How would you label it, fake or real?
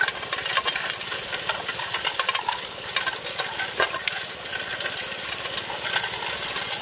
real